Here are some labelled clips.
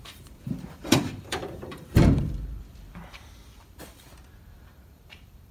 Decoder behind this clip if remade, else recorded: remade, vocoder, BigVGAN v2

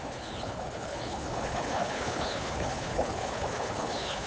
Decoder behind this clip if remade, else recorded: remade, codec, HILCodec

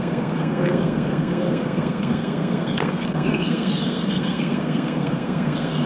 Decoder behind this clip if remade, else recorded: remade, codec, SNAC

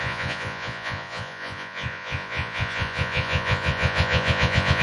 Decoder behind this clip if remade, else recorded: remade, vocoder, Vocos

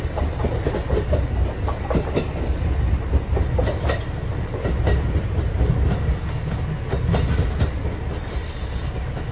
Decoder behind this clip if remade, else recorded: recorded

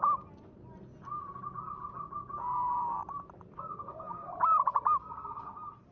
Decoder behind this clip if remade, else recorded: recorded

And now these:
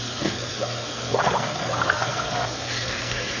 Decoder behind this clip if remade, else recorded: remade, codec, SNAC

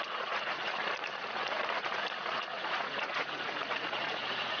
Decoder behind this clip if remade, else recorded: remade, vocoder, Vocos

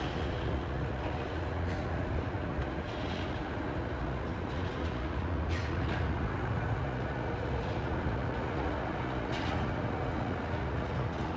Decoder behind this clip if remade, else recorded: remade, vocoder, Vocos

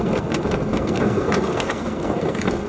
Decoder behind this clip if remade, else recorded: remade, codec, SNAC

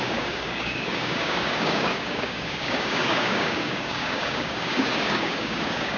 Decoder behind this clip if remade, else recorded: remade, codec, DAC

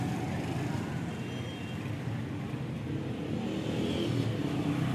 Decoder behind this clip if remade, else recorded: recorded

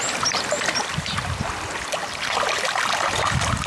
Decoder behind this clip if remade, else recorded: recorded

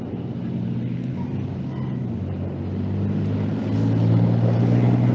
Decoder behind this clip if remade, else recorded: recorded